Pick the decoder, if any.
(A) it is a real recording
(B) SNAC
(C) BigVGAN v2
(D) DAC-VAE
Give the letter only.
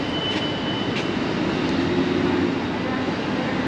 A